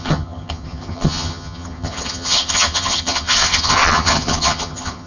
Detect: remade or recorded remade